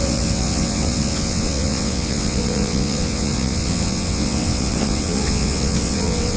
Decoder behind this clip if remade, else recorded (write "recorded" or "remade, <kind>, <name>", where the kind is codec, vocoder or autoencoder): remade, vocoder, WaveNeXt